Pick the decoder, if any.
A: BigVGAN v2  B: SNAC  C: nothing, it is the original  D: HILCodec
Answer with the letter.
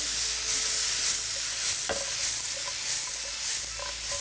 C